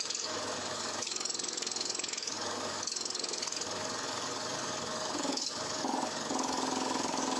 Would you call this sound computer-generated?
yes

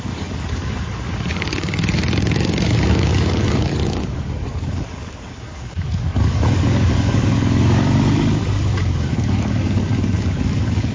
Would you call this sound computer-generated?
yes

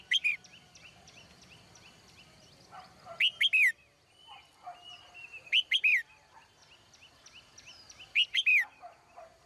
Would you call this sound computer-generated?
no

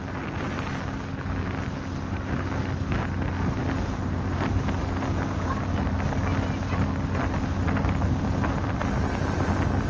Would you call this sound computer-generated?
no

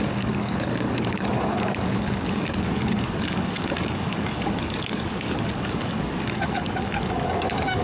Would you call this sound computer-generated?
yes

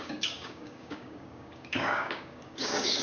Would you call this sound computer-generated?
yes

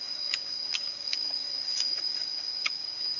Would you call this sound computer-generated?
yes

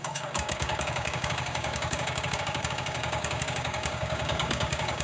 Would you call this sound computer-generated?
yes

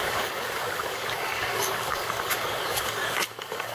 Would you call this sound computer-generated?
yes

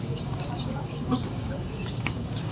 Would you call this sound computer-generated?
yes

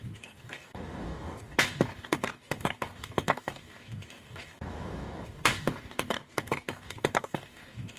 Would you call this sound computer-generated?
yes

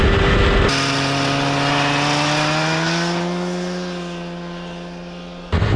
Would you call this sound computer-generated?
no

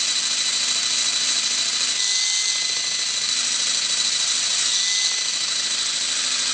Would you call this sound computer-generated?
no